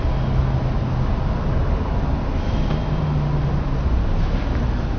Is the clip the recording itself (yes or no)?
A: yes